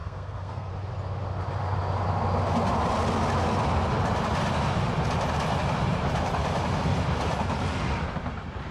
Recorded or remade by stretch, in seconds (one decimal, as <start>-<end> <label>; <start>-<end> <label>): 0.0-0.7 remade; 0.7-8.7 recorded